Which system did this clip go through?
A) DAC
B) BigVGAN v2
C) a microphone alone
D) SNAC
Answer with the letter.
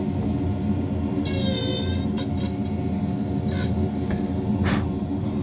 C